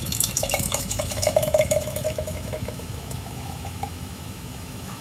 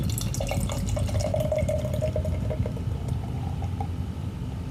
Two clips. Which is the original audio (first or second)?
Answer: second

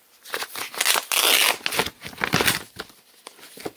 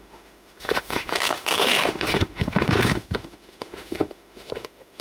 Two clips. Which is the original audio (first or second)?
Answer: first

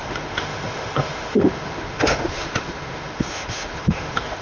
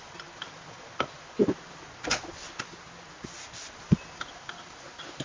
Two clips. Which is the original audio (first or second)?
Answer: second